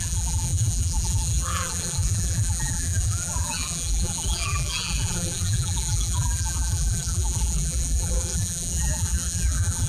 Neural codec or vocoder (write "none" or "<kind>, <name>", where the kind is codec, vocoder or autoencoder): vocoder, BigVGAN v2